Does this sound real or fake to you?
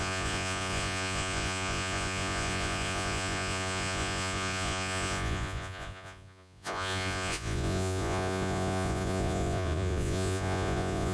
fake